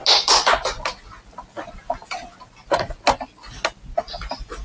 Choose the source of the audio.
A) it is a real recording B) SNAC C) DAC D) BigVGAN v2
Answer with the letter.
A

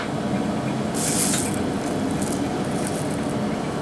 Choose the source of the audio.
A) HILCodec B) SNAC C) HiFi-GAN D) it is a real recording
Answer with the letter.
D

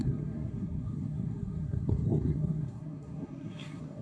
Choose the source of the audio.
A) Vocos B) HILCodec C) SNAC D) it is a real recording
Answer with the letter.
C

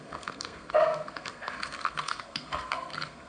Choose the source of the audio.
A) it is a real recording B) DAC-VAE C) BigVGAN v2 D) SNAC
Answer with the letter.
D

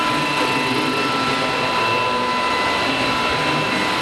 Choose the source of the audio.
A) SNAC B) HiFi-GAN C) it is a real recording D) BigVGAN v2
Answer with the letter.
C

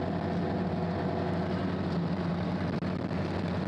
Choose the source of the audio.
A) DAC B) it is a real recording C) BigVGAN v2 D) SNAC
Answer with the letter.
B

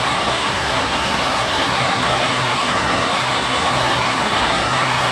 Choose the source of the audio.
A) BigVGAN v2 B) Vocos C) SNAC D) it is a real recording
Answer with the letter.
C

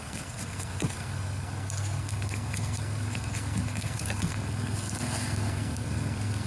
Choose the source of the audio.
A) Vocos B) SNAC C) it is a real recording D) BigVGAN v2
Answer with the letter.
B